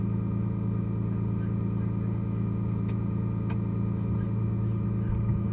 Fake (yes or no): no